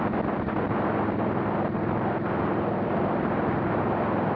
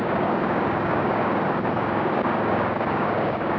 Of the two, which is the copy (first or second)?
second